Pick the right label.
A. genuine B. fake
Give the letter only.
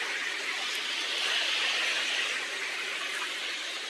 A